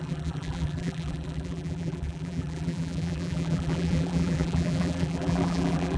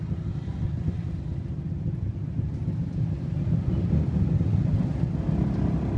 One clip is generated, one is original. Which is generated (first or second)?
first